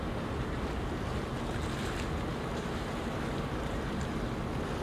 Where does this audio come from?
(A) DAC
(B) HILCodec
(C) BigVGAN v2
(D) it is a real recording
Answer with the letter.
D